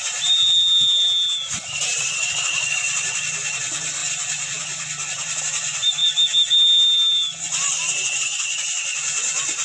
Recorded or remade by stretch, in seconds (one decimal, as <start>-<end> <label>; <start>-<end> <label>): 0.0-9.6 recorded